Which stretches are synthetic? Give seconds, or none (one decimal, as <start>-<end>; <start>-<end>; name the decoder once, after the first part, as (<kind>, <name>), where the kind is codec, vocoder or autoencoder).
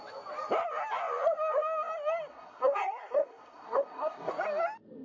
2.3-4.3 (codec, SNAC)